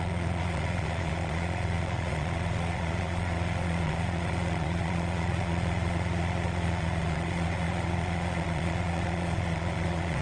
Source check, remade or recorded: remade